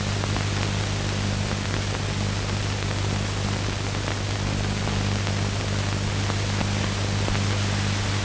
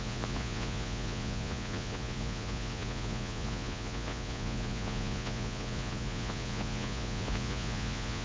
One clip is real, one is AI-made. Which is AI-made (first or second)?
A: second